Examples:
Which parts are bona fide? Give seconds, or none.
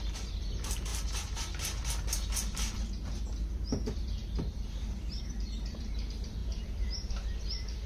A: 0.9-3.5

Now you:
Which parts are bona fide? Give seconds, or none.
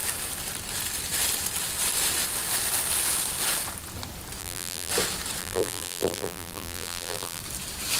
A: 0.0-4.4; 4.9-5.4; 7.4-8.0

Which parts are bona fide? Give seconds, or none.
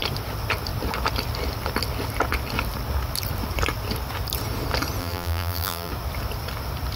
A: 0.0-5.0; 5.9-7.0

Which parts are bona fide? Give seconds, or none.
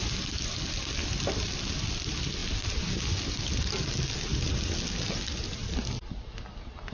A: 0.0-6.9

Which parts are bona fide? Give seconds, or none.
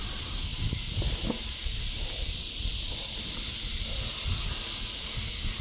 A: 0.0-5.6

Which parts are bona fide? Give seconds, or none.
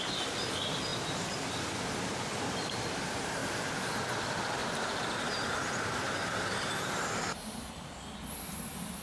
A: 0.0-4.6; 7.9-9.0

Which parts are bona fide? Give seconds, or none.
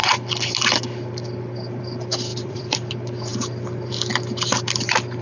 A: 0.0-2.3; 2.9-5.2